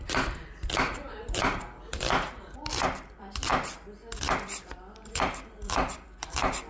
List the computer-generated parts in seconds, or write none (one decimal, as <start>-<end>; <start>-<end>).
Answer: 0.0-3.5; 4.2-6.7